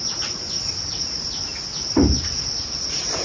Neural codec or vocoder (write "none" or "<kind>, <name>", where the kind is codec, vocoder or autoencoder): none